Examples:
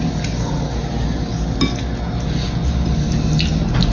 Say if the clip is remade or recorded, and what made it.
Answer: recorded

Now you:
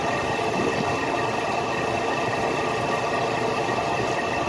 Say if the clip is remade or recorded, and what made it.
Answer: recorded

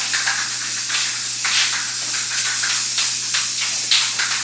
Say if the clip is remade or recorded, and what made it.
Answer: recorded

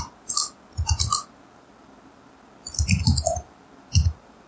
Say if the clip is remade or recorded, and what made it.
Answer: recorded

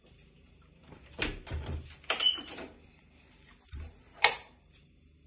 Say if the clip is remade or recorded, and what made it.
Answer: remade, vocoder, BigVGAN v2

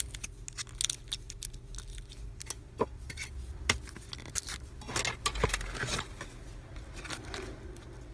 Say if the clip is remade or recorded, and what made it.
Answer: recorded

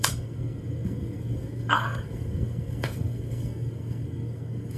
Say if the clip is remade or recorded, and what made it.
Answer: remade, codec, SNAC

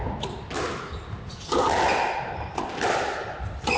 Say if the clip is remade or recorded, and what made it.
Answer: recorded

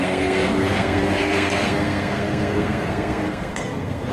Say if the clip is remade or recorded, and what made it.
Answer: remade, codec, SNAC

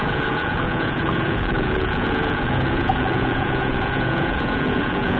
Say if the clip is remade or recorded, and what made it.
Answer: remade, vocoder, Vocos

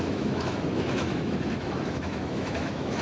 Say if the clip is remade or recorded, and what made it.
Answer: remade, autoencoder, DAC-VAE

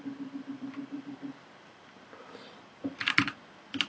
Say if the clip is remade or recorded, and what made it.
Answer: remade, vocoder, BigVGAN v2